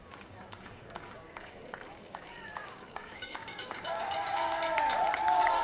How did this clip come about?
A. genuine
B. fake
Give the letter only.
B